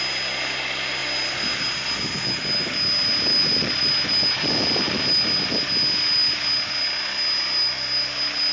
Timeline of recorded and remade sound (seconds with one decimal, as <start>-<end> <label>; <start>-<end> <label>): 0.0-8.5 recorded